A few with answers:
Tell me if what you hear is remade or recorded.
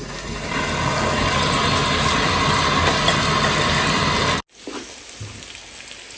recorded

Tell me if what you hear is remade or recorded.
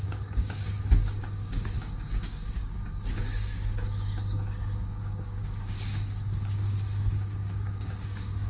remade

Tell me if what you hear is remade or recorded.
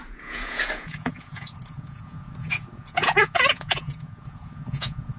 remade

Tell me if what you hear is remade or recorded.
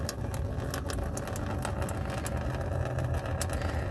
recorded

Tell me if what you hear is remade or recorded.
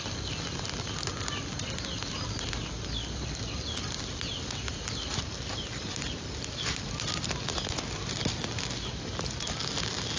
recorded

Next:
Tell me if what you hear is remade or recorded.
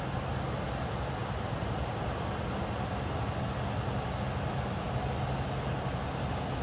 recorded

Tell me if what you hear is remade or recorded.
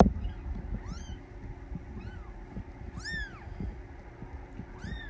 recorded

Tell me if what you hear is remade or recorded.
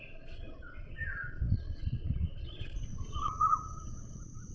remade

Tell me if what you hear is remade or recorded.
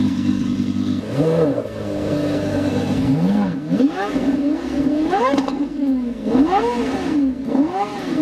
remade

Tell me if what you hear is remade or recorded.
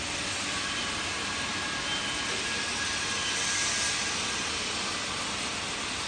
recorded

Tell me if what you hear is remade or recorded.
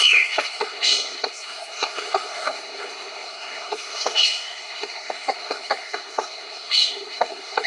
remade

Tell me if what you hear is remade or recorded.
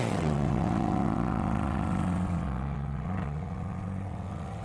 remade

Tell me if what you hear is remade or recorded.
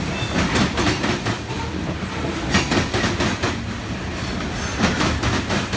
recorded